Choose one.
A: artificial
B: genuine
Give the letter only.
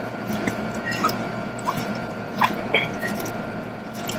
A